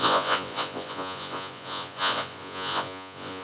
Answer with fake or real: fake